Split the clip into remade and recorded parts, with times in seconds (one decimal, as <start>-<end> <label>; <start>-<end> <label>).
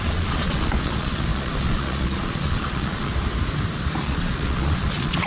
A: 0.0-3.1 remade; 3.1-4.0 recorded; 4.0-5.3 remade